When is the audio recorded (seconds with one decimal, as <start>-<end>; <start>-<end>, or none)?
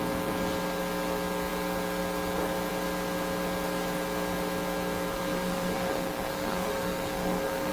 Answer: 0.0-5.1